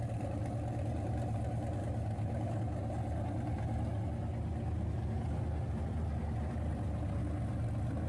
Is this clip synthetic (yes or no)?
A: no